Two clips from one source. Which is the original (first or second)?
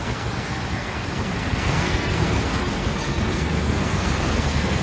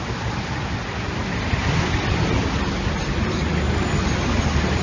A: second